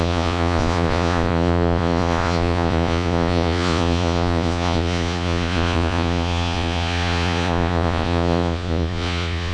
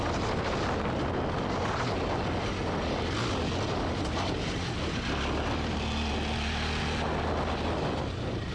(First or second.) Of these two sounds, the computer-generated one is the first